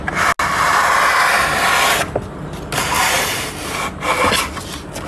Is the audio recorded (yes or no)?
yes